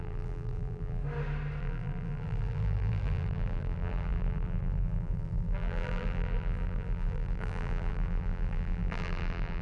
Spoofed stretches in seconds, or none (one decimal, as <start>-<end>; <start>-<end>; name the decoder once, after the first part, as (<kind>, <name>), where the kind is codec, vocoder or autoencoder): 0.0-1.0 (vocoder, BigVGAN v2); 1.6-9.6

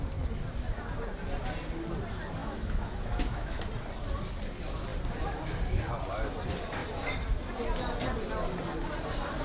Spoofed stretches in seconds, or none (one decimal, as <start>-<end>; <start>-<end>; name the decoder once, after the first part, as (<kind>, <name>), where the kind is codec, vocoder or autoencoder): 2.4-3.6 (autoencoder, DAC-VAE)

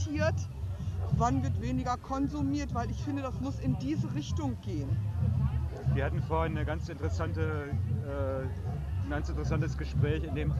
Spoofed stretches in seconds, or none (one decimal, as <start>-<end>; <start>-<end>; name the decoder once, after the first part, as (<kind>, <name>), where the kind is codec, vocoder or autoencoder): none

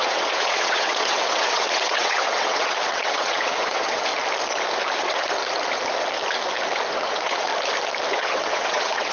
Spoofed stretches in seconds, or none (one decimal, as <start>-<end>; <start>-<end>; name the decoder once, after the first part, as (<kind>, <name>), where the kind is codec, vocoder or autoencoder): 0.0-4.1 (vocoder, WaveNeXt); 5.0-5.4; 6.9-7.5; 8.1-9.1